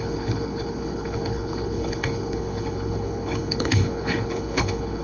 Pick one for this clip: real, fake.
fake